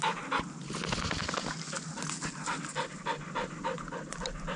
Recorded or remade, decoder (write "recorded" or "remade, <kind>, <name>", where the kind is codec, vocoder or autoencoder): recorded